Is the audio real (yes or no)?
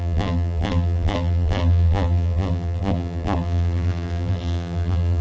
no